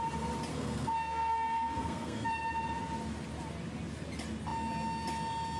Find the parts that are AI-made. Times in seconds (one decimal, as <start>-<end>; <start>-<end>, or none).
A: 0.5-2.3